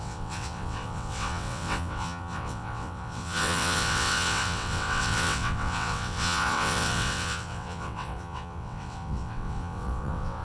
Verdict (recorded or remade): remade